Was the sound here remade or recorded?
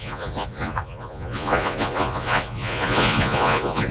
remade